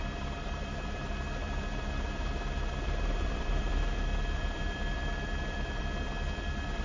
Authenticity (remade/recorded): remade